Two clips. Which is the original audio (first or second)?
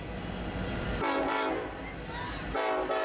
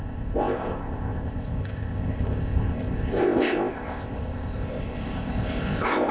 first